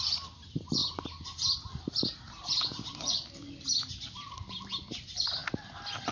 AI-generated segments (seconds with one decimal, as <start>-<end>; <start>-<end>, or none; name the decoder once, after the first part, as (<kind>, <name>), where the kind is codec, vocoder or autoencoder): none